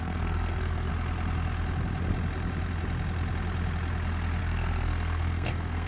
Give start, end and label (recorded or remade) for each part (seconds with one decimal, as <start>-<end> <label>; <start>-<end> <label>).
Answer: 0.0-0.9 remade; 0.9-4.4 recorded; 4.4-5.9 remade